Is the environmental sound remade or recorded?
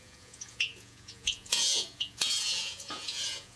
remade